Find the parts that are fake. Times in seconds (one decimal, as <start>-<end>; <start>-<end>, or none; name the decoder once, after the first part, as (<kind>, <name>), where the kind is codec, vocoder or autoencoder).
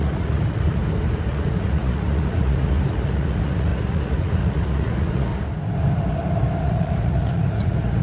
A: 0.0-0.8 (vocoder, Vocos); 1.3-5.3; 6.6-8.0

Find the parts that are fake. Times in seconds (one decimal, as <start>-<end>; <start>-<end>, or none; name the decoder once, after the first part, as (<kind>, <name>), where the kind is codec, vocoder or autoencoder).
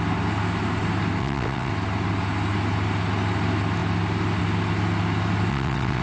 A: 1.2-1.7 (vocoder, WaveNeXt); 5.5-6.0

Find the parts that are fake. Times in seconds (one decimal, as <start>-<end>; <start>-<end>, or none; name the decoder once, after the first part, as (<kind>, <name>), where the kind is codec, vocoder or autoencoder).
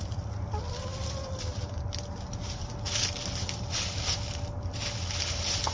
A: none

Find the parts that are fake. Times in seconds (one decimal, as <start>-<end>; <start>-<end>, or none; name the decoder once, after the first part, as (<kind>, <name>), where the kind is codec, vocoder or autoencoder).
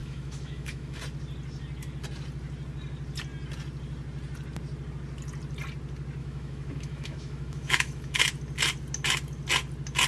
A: 0.0-1.0 (autoencoder, DAC-VAE); 6.2-8.2